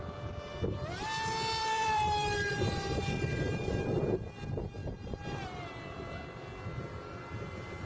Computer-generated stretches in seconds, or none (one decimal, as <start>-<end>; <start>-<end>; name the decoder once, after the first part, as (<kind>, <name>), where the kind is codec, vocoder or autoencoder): 1.6-4.0 (vocoder, BigVGAN v2); 4.8-5.7